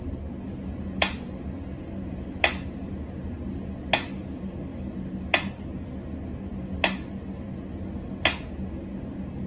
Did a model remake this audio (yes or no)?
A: no